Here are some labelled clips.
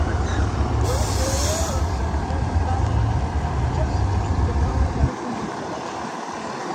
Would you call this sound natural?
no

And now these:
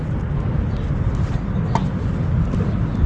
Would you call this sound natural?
yes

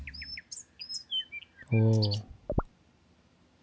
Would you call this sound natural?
yes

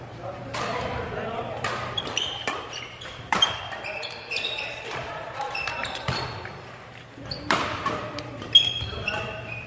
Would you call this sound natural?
no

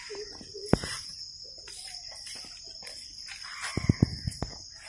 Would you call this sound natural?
yes